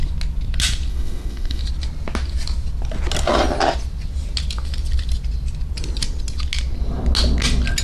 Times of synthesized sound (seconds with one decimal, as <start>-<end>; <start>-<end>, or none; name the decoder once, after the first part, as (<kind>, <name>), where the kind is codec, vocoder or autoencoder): 0.9-1.6 (autoencoder, DAC-VAE)